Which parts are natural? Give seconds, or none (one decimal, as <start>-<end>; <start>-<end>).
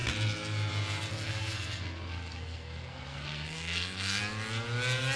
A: 0.0-1.1; 4.2-5.2